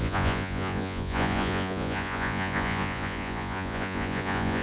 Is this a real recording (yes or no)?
no